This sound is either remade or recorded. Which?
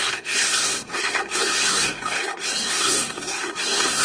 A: remade